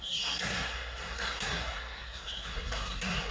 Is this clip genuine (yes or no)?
no